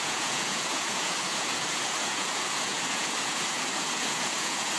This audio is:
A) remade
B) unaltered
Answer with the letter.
A